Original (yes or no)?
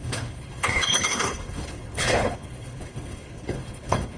no